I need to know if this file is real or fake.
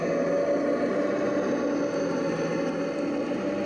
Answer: real